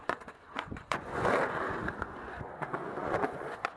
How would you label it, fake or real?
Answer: fake